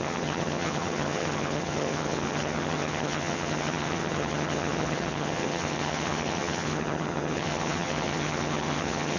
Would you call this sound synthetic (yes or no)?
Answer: yes